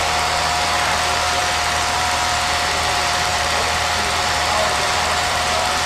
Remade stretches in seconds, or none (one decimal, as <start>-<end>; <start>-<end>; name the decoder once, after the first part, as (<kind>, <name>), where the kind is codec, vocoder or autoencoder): 0.0-5.9 (vocoder, BigVGAN v2)